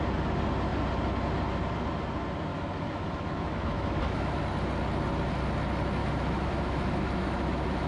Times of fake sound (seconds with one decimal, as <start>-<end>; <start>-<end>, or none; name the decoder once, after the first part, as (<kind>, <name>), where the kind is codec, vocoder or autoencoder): 2.5-4.4 (autoencoder, DAC-VAE); 6.0-7.9